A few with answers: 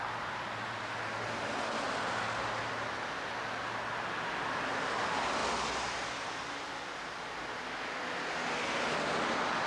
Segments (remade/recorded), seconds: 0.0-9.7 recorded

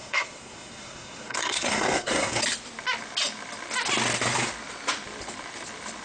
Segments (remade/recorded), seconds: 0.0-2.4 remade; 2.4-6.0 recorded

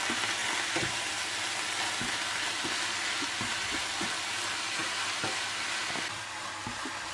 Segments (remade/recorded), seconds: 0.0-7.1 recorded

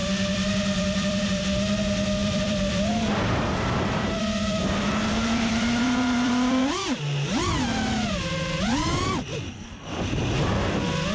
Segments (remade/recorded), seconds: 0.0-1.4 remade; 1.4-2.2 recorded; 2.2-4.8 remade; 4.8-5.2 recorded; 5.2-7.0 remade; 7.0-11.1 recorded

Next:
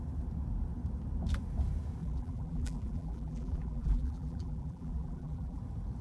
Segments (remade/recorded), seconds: 0.0-2.0 recorded; 2.0-5.6 remade; 5.6-6.0 recorded

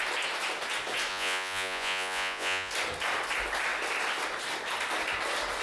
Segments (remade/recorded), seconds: 0.0-1.1 recorded; 1.1-2.7 remade; 2.7-5.6 recorded

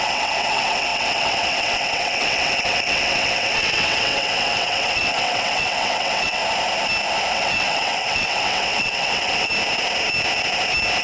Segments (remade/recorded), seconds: 0.0-6.4 remade; 6.4-7.3 recorded; 7.3-9.5 remade; 9.5-11.0 recorded